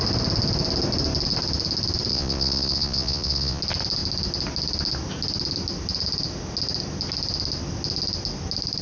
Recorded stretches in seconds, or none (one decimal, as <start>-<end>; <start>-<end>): 0.0-2.1; 3.6-8.8